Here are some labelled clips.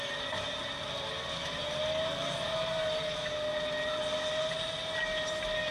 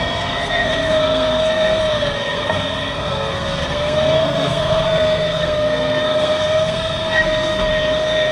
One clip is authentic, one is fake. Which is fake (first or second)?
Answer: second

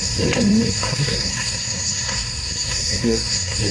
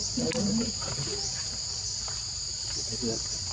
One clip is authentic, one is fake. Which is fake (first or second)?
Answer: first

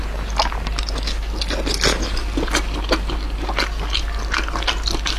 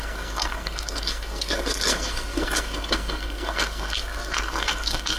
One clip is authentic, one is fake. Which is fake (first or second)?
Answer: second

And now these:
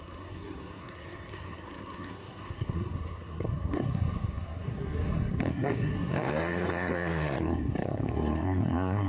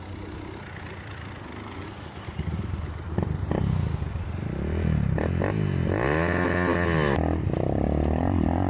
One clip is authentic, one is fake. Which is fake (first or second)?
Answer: first